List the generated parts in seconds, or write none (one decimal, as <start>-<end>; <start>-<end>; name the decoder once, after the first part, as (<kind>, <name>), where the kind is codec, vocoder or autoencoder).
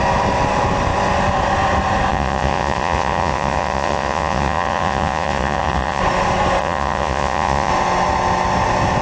2.1-6.0 (vocoder, Vocos); 6.6-7.7